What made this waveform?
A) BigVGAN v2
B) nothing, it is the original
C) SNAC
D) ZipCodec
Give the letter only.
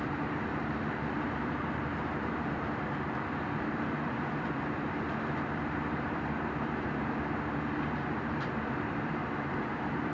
A